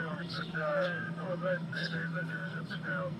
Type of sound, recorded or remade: remade